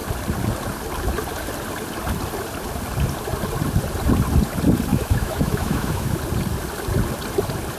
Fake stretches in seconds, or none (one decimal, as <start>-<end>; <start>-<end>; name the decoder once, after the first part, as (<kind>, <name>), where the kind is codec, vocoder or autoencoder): 4.9-6.2 (autoencoder, DAC-VAE)